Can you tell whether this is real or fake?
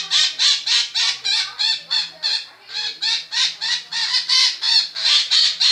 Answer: real